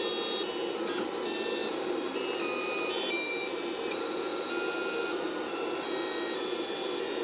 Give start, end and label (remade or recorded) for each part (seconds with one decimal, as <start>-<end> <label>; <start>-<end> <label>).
0.0-1.6 recorded; 1.6-2.1 remade; 2.1-2.6 recorded; 2.6-3.8 remade; 3.8-7.2 recorded